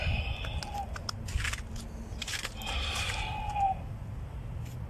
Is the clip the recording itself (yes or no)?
yes